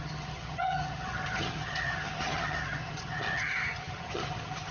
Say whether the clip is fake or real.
fake